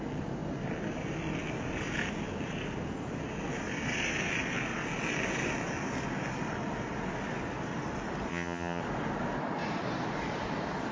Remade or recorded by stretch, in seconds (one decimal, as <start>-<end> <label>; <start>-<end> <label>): 0.0-8.3 recorded; 8.3-8.8 remade; 8.8-10.9 recorded